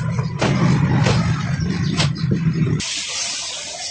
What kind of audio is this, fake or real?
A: real